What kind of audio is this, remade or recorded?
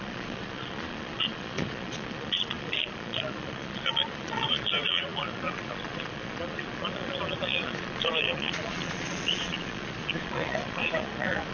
remade